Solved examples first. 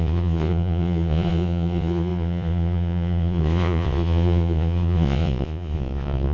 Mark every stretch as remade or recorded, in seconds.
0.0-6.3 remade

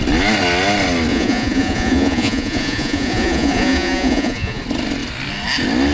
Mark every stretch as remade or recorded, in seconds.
0.0-1.1 recorded; 1.1-4.6 remade; 4.6-5.9 recorded

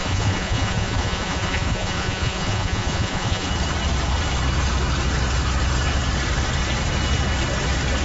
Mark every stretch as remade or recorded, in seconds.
0.0-3.5 remade; 3.5-8.0 recorded

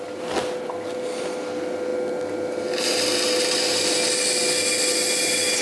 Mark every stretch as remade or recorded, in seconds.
0.0-5.6 recorded

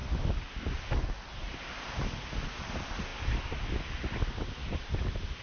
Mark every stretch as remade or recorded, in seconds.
0.0-5.4 recorded

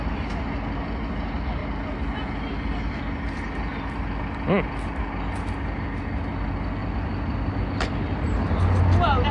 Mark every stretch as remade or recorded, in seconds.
0.0-9.3 recorded

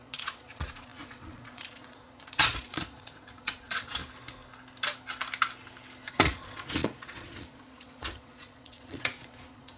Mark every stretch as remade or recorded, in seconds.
0.0-4.0 remade; 4.0-6.1 recorded; 6.1-9.8 remade

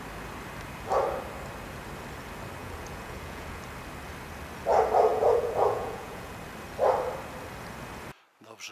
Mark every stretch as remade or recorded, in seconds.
0.0-2.6 recorded; 2.6-3.6 remade; 3.6-5.1 recorded; 5.1-6.3 remade; 6.3-8.7 recorded